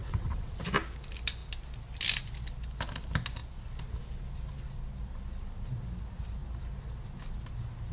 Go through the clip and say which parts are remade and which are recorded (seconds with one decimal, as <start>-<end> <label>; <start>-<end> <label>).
0.0-0.6 remade; 0.6-7.9 recorded